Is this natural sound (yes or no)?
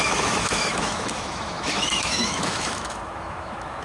no